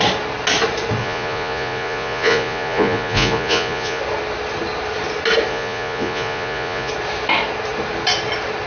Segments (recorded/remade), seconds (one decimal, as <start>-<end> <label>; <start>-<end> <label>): 0.0-1.0 recorded; 1.0-4.0 remade; 4.0-5.5 recorded; 5.5-6.9 remade; 6.9-8.7 recorded